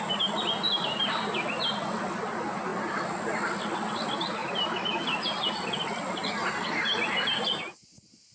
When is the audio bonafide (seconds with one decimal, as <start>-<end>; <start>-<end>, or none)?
0.0-8.3